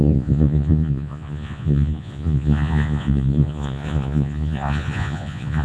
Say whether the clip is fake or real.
fake